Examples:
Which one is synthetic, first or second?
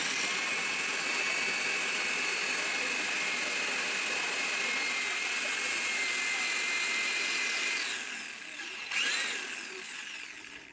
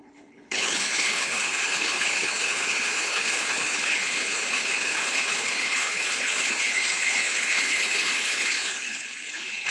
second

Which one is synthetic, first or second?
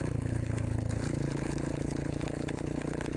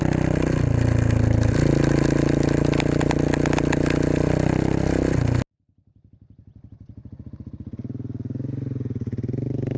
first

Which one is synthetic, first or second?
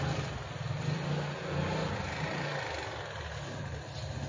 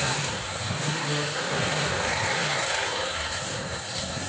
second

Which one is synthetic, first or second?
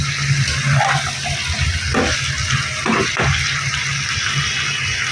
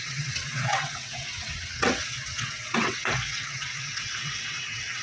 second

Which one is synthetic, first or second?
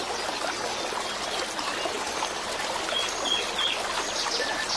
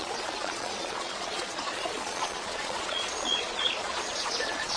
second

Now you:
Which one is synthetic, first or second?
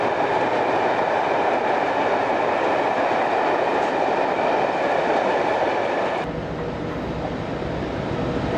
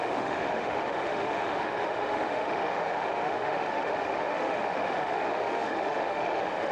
second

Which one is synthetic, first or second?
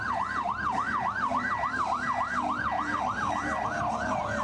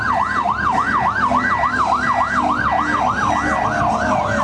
first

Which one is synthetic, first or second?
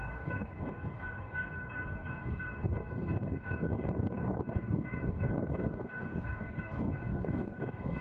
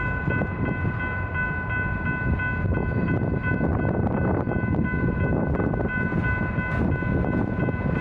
first